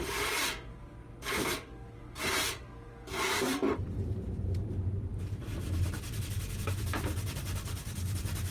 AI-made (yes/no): yes